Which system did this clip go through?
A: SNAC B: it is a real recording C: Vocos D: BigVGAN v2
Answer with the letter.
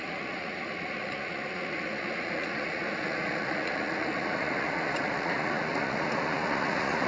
C